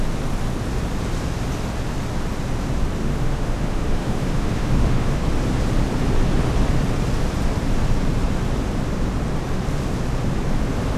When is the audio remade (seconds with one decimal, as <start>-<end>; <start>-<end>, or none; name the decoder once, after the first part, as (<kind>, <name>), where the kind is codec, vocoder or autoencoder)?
3.0-5.2 (autoencoder, DAC-VAE)